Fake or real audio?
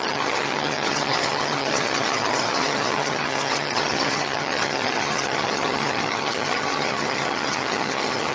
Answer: fake